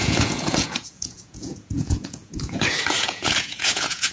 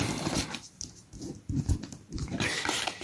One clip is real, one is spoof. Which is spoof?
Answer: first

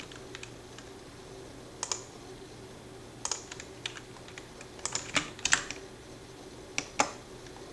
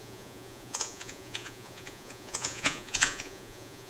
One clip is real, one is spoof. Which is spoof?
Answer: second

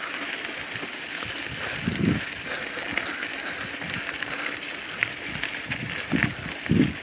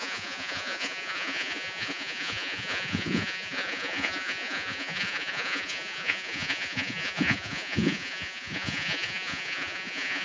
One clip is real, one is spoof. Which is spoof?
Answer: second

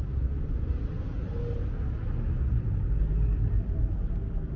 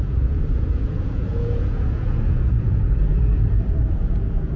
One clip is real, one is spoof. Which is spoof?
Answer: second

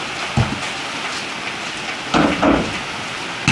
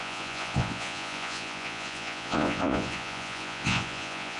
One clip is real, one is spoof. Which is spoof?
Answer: second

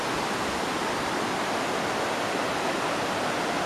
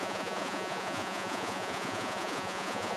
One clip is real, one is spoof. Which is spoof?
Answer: second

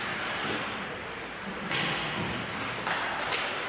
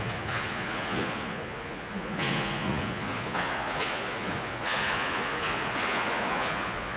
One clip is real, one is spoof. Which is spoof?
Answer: second